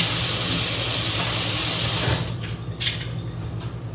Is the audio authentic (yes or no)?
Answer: yes